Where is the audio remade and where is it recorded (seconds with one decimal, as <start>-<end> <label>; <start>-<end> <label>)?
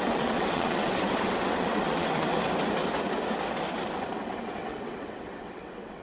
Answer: 0.0-2.3 remade; 2.3-3.9 recorded; 3.9-6.0 remade